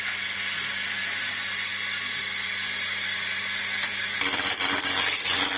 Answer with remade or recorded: recorded